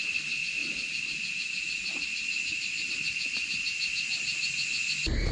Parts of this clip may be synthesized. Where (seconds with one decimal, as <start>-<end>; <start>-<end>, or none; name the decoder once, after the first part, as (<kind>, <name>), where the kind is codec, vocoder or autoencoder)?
none

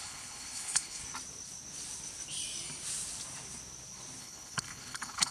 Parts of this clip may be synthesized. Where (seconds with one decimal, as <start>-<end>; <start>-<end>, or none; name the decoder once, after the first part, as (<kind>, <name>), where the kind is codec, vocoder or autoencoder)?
0.0-1.0 (codec, HILCodec); 4.2-5.3

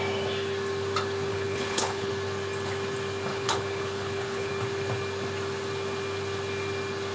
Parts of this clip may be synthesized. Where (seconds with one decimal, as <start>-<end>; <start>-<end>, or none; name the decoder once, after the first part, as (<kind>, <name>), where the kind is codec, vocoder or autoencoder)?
1.3-2.1 (codec, HILCodec); 3.3-4.5